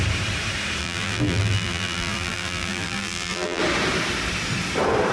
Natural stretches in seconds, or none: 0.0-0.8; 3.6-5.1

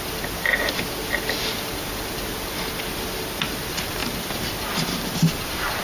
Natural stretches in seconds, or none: 0.0-4.0

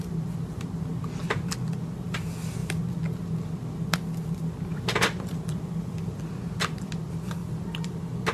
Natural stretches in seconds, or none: 0.0-4.7; 6.2-7.4; 7.9-8.3

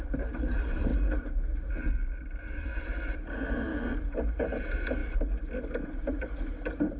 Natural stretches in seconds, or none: 0.9-2.4; 3.7-4.2; 5.0-5.9

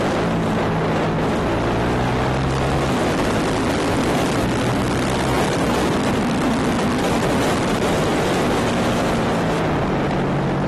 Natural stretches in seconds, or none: 0.0-10.7

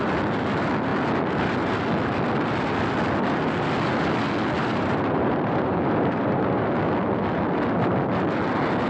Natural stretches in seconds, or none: 0.0-4.7; 6.7-8.9